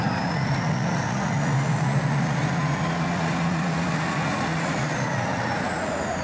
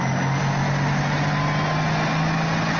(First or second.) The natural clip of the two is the second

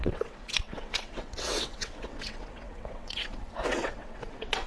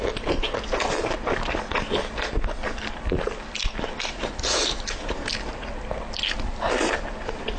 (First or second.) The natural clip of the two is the second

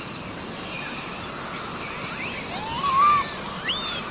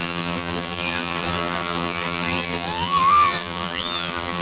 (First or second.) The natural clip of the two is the first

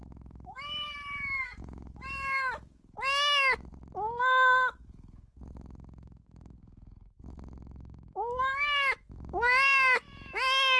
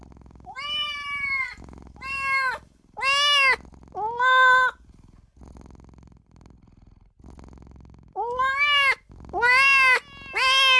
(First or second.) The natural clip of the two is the second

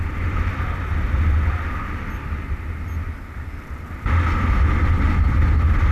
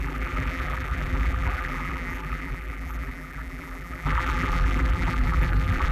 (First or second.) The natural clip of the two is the first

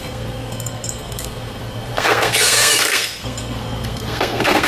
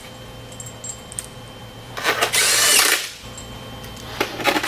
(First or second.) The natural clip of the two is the second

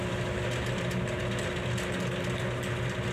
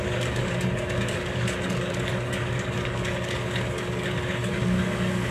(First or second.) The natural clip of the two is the first